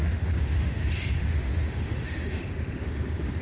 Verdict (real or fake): fake